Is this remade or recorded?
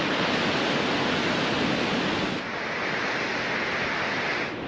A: recorded